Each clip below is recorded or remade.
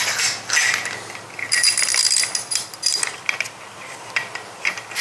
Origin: recorded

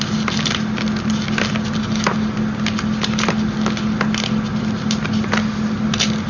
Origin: recorded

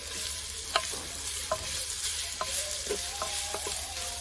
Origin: recorded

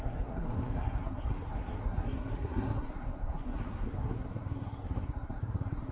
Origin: remade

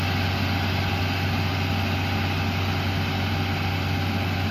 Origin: recorded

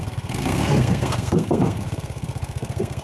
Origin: remade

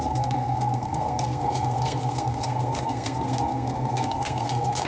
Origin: remade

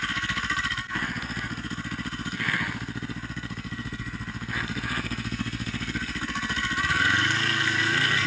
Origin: remade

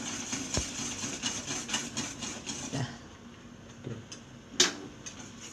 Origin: recorded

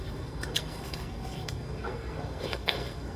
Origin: remade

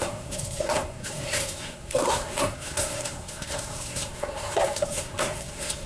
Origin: remade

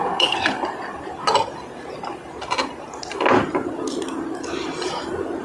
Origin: recorded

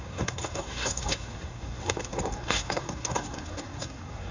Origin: remade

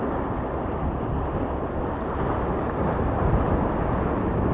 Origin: recorded